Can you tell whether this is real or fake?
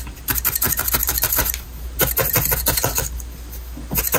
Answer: real